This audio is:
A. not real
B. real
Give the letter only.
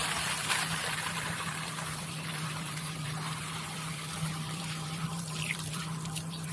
A